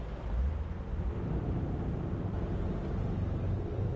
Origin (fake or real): real